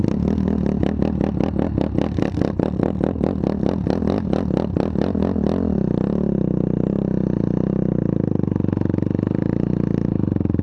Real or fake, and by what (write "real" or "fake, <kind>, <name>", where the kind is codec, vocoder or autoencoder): real